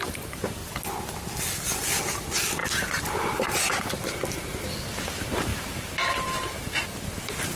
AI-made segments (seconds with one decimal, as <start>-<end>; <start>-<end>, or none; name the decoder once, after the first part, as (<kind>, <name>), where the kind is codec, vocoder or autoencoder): 0.0-0.6 (vocoder, BigVGAN v2); 1.8-4.5; 5.0-7.6